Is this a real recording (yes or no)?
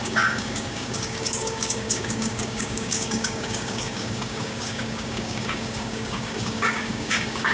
no